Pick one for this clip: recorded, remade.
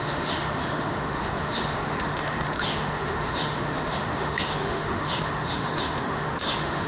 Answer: remade